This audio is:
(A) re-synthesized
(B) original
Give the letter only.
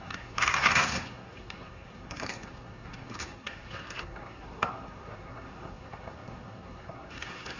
A